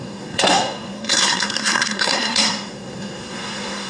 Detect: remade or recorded remade